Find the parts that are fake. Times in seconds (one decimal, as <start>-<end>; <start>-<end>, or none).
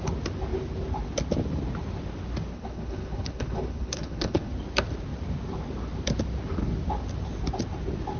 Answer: 2.5-4.5